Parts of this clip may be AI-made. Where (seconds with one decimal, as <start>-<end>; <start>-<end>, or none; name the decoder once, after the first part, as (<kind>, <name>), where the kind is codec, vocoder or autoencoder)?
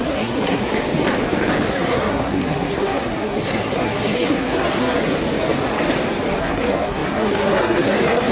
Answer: 0.0-0.7 (codec, SNAC); 1.7-5.1; 6.4-8.3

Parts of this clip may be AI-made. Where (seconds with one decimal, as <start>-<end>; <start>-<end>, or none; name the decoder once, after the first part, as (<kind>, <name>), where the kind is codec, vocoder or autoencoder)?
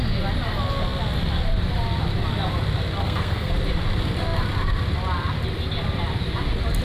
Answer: 3.0-3.5 (codec, SNAC)